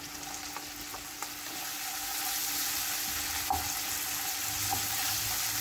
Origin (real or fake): real